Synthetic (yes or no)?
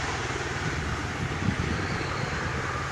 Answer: no